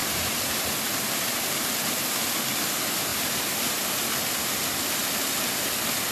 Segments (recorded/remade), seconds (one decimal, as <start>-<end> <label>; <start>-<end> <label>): 0.0-0.8 remade; 0.8-3.1 recorded; 3.1-3.7 remade; 3.7-6.1 recorded